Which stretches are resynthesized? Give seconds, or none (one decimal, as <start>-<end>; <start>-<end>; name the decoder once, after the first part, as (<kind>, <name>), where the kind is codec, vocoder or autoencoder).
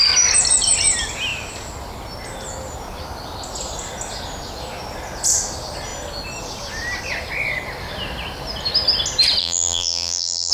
9.4-10.5 (vocoder, BigVGAN v2)